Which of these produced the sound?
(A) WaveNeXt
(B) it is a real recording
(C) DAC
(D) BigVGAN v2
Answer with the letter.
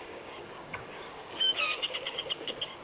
C